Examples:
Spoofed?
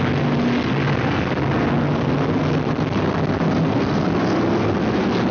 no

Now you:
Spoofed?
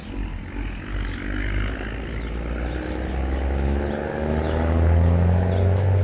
no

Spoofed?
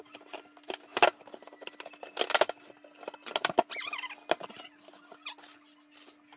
no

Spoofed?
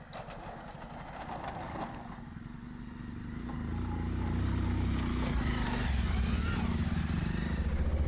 no